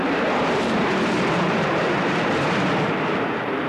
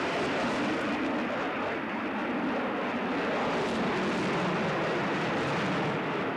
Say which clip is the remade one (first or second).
first